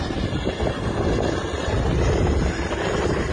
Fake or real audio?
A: real